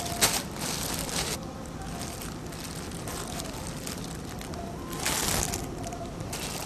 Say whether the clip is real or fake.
fake